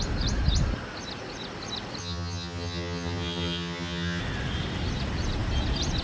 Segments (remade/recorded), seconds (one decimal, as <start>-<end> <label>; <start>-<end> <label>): 0.0-2.0 recorded; 2.0-4.2 remade; 4.2-6.0 recorded

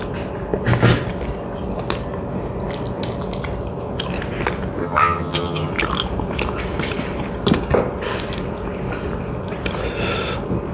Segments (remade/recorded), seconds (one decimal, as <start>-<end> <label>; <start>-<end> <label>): 0.0-4.8 recorded; 4.8-5.7 remade; 5.7-10.7 recorded

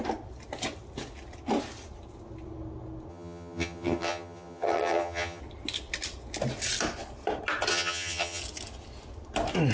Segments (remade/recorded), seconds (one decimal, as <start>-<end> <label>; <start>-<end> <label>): 0.0-3.1 recorded; 3.1-5.4 remade; 5.4-7.7 recorded; 7.7-8.4 remade; 8.4-9.7 recorded

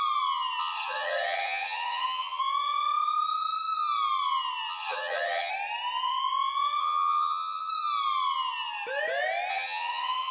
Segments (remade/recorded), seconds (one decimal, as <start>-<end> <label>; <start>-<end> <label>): 0.0-0.6 recorded; 0.6-2.4 remade; 2.4-4.7 recorded; 4.7-5.5 remade; 5.5-6.8 recorded; 6.8-7.7 remade; 7.7-9.5 recorded; 9.5-10.3 remade

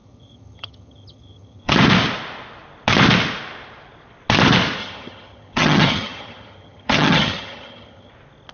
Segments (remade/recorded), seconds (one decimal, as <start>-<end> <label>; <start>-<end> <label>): 0.0-1.7 remade; 1.7-4.8 recorded; 4.8-8.1 remade; 8.1-8.5 recorded